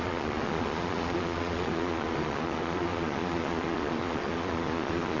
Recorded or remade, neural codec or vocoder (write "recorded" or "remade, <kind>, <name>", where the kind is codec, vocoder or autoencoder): remade, vocoder, Vocos